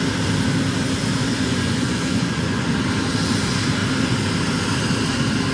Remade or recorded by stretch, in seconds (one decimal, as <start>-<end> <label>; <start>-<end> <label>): 0.0-1.3 recorded; 1.3-2.7 remade; 2.7-5.5 recorded